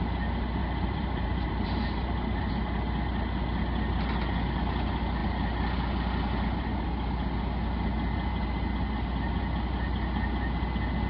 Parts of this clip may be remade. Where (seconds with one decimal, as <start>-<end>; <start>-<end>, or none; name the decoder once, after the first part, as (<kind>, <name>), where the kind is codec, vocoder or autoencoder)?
0.6-2.5 (vocoder, BigVGAN v2)